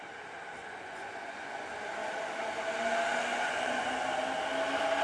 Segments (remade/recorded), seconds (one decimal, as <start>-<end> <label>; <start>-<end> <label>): 0.0-0.6 recorded; 0.6-1.7 remade; 1.7-3.3 recorded; 3.3-3.9 remade; 3.9-5.0 recorded